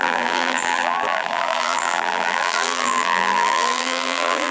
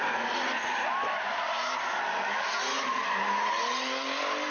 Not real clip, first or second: first